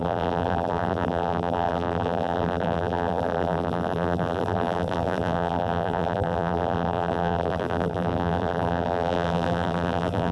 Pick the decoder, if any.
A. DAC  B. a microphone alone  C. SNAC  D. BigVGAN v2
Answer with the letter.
D